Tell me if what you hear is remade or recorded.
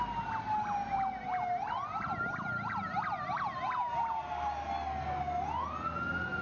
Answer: recorded